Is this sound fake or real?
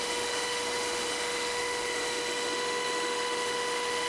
fake